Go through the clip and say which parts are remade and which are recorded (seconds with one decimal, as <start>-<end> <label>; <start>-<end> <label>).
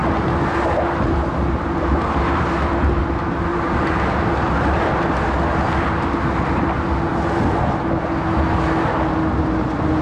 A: 0.0-3.5 recorded; 3.5-4.2 remade; 4.2-10.0 recorded